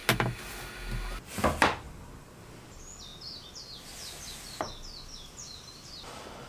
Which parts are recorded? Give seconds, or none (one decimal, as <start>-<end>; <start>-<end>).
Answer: 0.0-6.5